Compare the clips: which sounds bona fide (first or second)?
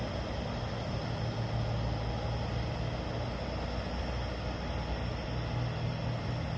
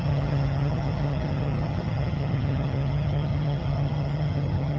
first